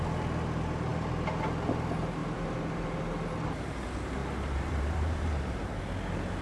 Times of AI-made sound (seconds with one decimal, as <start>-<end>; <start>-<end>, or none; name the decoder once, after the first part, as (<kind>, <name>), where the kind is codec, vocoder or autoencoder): 2.2-3.0 (vocoder, BigVGAN v2); 4.2-5.8